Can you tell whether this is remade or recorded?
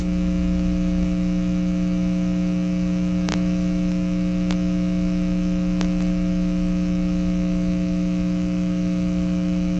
remade